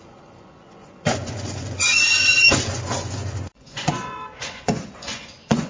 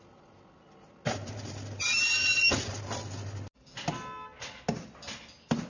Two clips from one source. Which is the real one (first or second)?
second